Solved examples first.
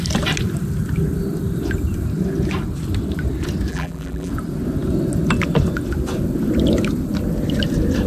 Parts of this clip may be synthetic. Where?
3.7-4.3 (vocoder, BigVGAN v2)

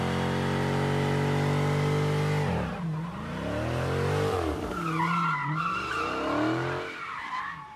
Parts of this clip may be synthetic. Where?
none

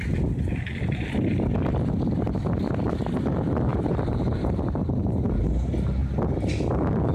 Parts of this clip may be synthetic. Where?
3.7-5.3 (vocoder, BigVGAN v2)

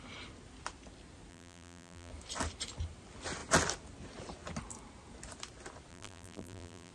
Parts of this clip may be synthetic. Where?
1.3-2.1 (vocoder, BigVGAN v2); 5.9-6.9

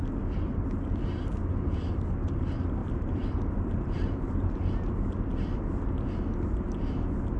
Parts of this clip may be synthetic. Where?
2.8-4.5 (vocoder, BigVGAN v2)